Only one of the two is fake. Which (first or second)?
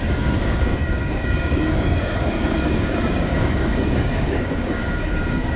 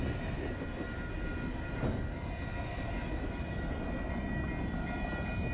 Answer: first